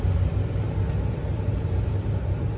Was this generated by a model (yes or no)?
no